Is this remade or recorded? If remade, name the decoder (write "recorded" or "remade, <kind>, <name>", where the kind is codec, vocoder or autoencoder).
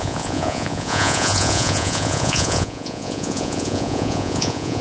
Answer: remade, vocoder, Vocos